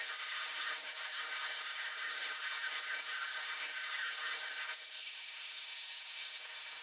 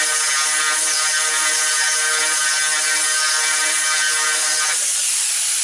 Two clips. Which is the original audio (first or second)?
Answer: second